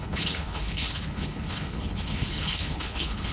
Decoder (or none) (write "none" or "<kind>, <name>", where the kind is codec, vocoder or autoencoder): codec, HILCodec